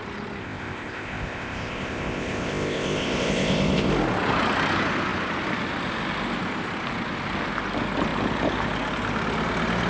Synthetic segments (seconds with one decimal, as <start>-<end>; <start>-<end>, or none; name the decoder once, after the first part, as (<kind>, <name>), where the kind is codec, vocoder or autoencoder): 0.4-3.9 (codec, ZipCodec)